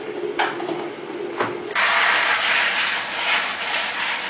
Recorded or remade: recorded